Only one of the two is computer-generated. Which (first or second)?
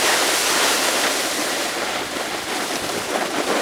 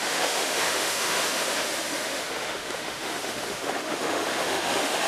second